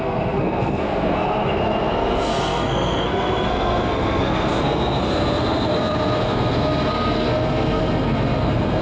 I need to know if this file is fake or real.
fake